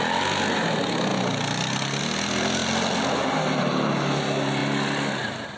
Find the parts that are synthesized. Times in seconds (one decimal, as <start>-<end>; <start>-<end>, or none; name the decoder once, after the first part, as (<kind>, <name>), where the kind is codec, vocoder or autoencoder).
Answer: none